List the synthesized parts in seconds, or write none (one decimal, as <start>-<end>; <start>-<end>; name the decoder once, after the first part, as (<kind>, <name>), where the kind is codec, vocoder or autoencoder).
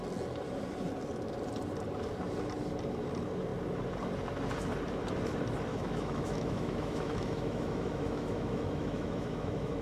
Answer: 5.7-9.8 (autoencoder, DAC-VAE)